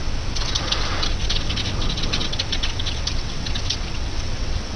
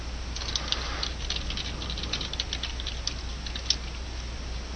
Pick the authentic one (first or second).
second